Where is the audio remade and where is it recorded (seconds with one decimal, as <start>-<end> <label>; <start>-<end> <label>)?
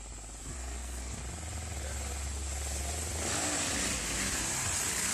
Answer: 0.0-0.4 recorded; 0.4-1.2 remade; 1.2-5.1 recorded